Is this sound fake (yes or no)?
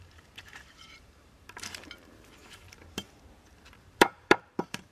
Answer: yes